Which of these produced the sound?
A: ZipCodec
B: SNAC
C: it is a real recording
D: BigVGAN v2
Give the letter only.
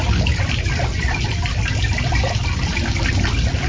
C